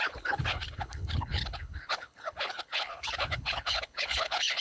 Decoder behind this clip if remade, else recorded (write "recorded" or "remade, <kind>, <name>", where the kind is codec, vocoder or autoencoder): remade, codec, HILCodec